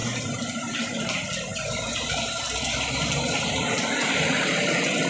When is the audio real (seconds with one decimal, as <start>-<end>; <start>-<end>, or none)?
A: 1.0-1.5; 4.6-5.1